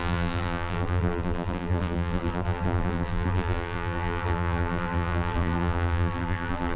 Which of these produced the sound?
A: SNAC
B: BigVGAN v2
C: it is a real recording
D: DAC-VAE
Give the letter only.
B